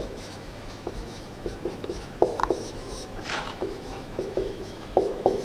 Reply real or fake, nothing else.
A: fake